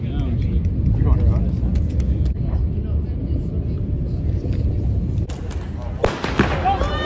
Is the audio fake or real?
real